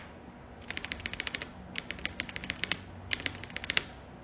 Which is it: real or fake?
real